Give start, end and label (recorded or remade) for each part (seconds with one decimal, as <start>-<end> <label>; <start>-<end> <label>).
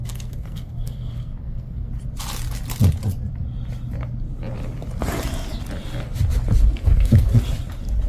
0.0-1.9 remade; 1.9-6.8 recorded; 6.8-7.4 remade; 7.4-8.1 recorded